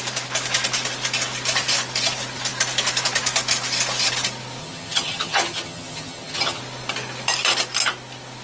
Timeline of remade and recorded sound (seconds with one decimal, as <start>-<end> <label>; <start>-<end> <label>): 0.0-4.6 recorded; 4.6-6.6 remade; 6.6-8.4 recorded